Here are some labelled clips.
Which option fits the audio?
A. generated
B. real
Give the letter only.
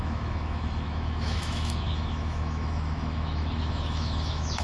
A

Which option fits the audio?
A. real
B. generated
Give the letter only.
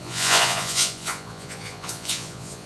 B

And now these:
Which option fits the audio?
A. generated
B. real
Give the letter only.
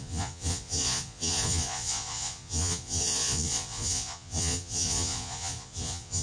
A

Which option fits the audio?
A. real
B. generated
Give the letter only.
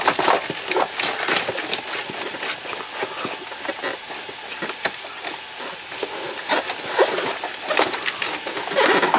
A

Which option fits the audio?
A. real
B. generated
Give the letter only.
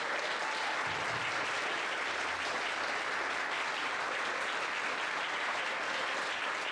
A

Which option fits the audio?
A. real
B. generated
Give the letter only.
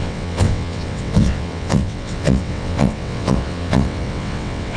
B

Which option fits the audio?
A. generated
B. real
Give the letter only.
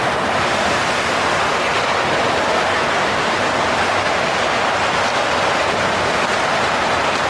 B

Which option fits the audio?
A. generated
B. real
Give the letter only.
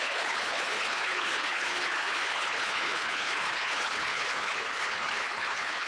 A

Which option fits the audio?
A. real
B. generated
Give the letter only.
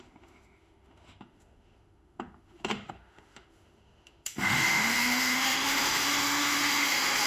B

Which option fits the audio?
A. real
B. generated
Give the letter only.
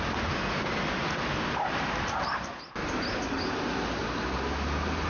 A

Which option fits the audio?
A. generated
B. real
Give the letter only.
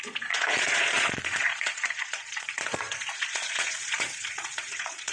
A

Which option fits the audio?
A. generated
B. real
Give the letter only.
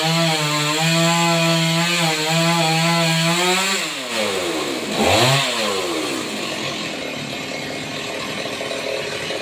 B